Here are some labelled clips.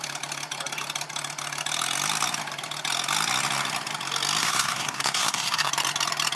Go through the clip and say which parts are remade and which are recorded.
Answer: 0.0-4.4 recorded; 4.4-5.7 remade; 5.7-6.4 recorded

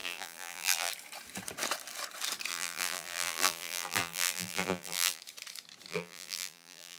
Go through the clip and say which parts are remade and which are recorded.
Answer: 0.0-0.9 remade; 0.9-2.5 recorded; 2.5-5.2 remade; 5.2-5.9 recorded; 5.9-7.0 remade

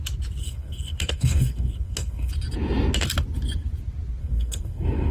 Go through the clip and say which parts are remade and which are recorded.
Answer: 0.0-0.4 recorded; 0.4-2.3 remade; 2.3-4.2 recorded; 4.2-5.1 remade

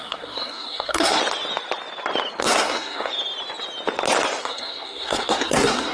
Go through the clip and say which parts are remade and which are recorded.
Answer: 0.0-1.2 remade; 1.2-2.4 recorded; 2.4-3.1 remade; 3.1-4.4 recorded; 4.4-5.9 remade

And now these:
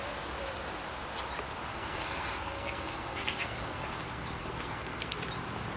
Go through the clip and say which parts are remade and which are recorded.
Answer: 0.0-1.7 recorded; 1.7-5.2 remade; 5.2-5.8 recorded

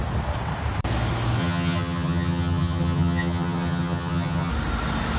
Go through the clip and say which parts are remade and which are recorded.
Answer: 0.0-1.4 recorded; 1.4-4.5 remade; 4.5-5.2 recorded

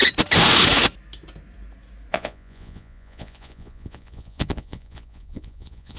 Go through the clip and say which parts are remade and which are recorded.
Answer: 0.0-2.1 recorded; 2.1-6.0 remade

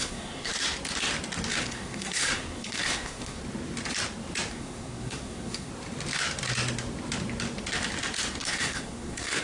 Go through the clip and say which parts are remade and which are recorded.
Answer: 0.0-0.5 remade; 0.5-1.6 recorded; 1.6-3.4 remade; 3.4-4.5 recorded; 4.5-5.7 remade; 5.7-8.4 recorded; 8.4-9.4 remade